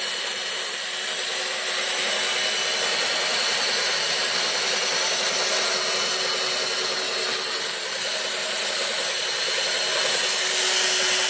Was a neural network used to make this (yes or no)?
no